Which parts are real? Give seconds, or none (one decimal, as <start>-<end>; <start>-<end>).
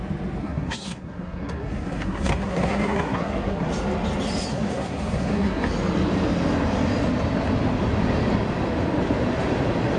0.0-0.4; 3.7-4.5; 5.7-10.0